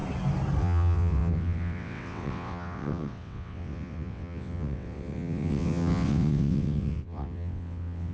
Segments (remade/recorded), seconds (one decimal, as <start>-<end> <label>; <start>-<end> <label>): 0.0-0.6 recorded; 0.6-8.1 remade